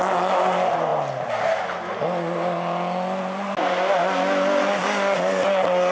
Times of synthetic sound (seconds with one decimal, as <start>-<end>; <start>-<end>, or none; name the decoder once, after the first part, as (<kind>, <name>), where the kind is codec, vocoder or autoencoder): none